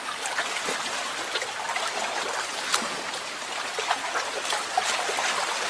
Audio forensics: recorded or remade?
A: recorded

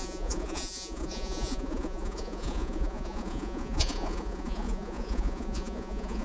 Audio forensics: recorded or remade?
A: remade